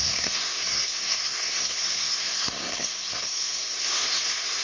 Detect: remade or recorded remade